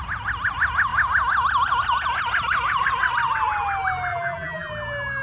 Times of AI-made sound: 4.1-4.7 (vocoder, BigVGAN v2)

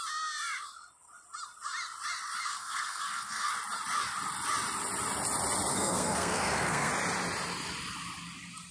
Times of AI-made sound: 2.5-3.5 (codec, SNAC); 5.7-6.9

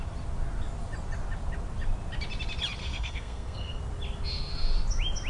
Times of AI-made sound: 2.8-3.8 (codec, SNAC)

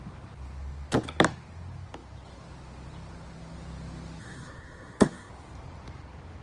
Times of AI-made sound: 4.2-5.3 (codec, SNAC)